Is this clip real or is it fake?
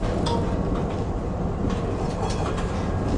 real